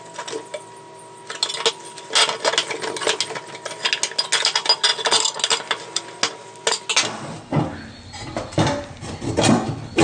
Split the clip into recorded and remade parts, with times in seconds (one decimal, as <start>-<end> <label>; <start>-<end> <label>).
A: 0.0-10.0 recorded